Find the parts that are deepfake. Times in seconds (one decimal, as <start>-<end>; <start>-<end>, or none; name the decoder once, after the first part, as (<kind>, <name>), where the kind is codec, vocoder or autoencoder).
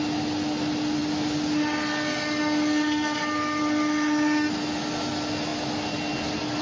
none